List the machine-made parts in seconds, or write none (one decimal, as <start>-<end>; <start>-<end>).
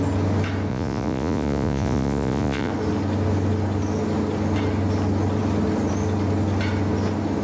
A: 0.7-2.7